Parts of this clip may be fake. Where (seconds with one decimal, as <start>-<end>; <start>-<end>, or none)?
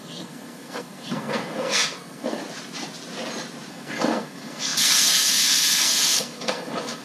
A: 0.0-2.4; 3.7-7.0